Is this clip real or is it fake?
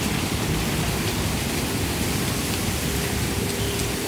real